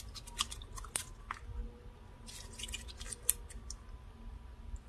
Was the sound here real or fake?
real